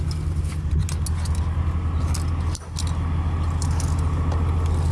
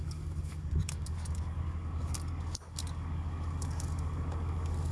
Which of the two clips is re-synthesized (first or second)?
second